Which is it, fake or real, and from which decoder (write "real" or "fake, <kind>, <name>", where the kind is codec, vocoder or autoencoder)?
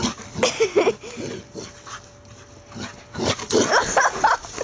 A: real